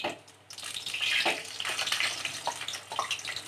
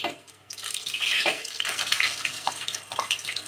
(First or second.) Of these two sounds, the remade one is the second